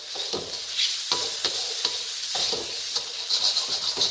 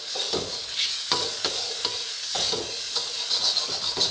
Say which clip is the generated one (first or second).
second